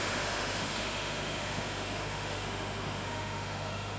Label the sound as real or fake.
fake